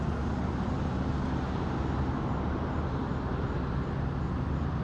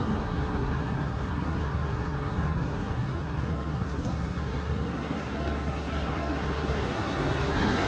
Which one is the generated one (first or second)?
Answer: second